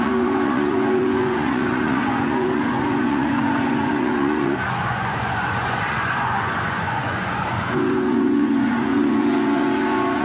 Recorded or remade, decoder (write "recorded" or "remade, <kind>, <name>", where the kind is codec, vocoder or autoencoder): remade, vocoder, Vocos